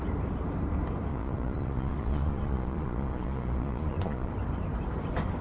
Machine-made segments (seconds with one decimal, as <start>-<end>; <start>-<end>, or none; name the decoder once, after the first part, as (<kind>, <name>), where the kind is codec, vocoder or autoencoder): 1.1-4.3 (vocoder, Vocos)